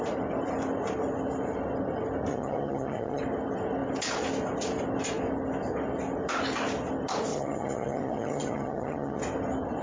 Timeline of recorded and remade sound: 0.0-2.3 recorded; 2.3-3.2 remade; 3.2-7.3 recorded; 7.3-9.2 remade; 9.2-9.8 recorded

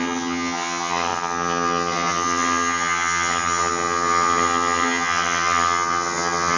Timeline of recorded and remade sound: 0.0-6.6 remade

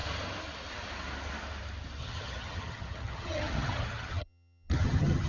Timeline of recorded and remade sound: 0.0-2.0 recorded; 2.0-5.3 remade

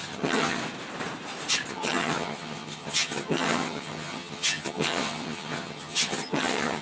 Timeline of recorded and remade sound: 0.0-0.6 remade; 0.6-1.7 recorded; 1.7-6.8 remade